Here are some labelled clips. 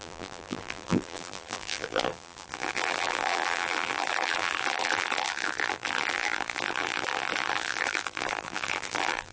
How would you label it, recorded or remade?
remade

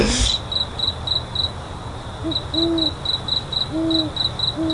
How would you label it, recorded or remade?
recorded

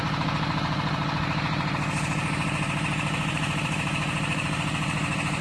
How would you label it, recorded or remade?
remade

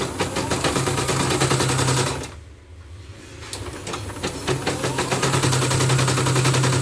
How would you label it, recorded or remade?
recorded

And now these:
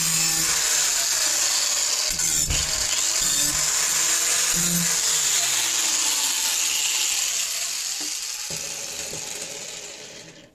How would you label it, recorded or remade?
recorded